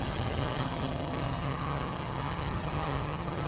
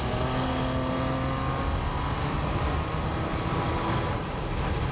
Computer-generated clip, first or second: first